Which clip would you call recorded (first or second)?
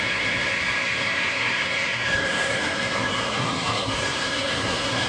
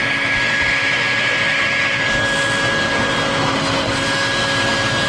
second